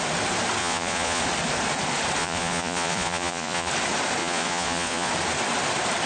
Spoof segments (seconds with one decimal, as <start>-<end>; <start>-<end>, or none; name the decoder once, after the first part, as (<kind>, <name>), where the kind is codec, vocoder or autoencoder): 0.6-1.2 (vocoder, Vocos); 2.2-3.7; 4.2-5.1